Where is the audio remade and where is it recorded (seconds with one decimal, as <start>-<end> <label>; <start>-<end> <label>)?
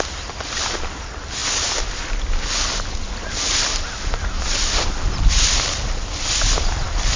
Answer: 0.0-7.2 recorded